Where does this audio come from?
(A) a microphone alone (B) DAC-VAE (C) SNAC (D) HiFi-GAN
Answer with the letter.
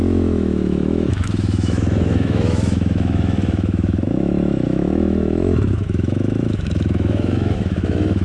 B